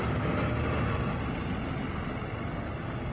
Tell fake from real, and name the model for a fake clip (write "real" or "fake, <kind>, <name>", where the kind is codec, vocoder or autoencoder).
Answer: real